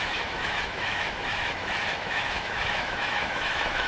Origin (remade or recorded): remade